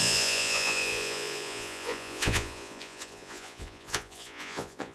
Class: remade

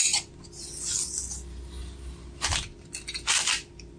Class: recorded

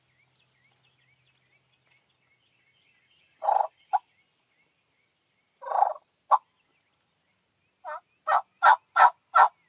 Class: recorded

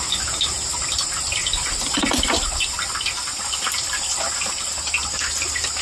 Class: recorded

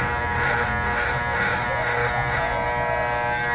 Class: recorded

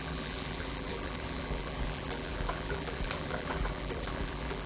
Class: remade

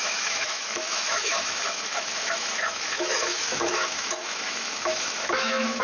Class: remade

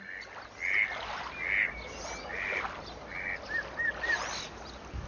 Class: recorded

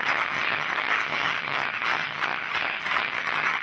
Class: remade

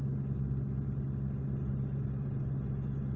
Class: recorded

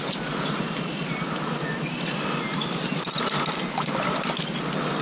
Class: recorded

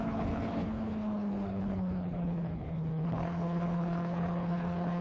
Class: remade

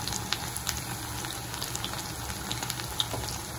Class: recorded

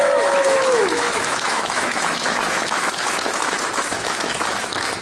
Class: remade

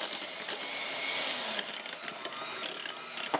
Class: recorded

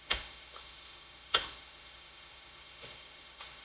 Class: remade